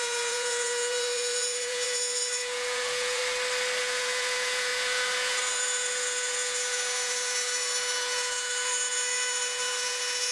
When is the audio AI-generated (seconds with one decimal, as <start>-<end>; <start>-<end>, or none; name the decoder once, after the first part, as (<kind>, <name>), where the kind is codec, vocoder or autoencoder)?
0.0-3.2 (vocoder, Vocos); 3.8-10.3

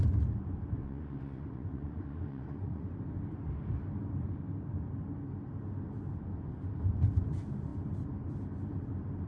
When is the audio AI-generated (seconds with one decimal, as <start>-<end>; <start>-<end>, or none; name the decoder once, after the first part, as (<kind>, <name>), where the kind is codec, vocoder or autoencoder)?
0.8-2.9 (vocoder, Vocos)

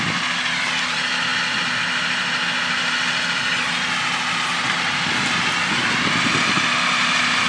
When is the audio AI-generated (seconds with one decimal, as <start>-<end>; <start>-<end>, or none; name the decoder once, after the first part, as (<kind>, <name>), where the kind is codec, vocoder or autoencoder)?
none